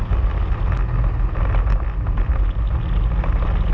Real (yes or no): yes